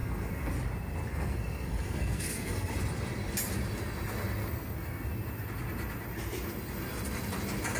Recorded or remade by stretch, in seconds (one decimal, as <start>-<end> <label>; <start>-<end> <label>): 0.0-0.5 remade; 0.5-1.1 recorded; 1.1-2.7 remade; 2.7-4.4 recorded; 4.4-5.1 remade; 5.1-7.8 recorded